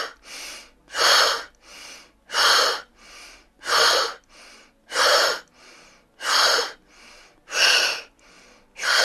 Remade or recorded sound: recorded